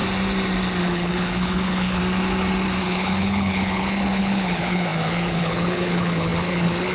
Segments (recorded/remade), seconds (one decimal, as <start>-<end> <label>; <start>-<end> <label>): 0.0-0.8 recorded; 0.8-2.0 remade; 2.0-2.8 recorded; 2.8-6.9 remade